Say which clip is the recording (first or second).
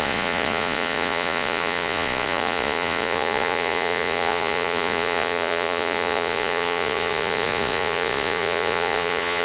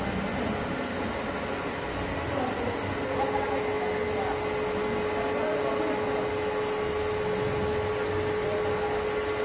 second